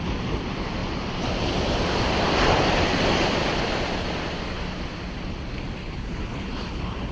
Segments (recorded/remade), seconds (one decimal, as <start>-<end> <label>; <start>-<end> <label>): 0.0-5.8 recorded; 5.8-7.1 remade